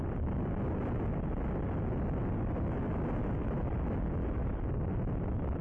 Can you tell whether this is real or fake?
real